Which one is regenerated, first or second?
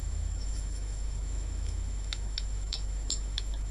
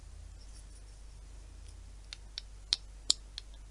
first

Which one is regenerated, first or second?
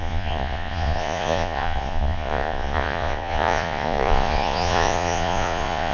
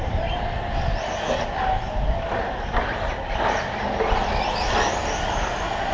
first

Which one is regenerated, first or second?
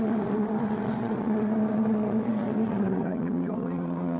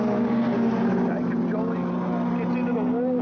first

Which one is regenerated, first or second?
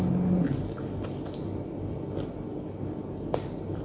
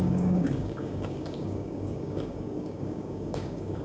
second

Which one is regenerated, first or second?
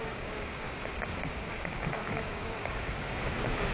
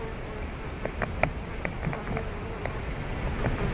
first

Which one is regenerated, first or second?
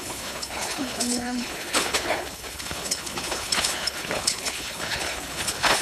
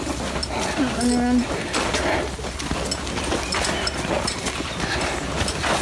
first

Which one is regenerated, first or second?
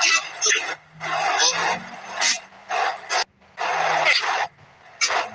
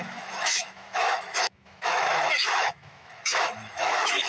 second